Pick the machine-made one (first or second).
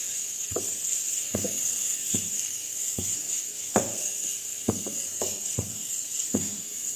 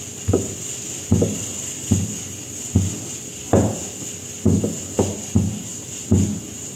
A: first